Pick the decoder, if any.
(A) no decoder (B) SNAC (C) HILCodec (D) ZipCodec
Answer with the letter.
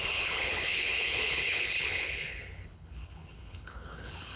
C